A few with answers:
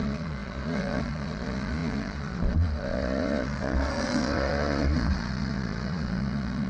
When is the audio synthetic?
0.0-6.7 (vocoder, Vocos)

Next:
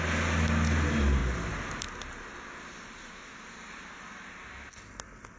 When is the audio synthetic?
none

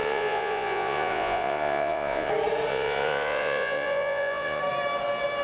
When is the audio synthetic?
0.0-2.3 (vocoder, Vocos); 2.7-4.6

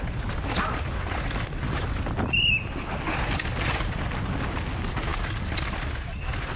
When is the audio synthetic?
none